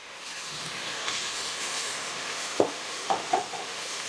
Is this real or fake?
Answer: fake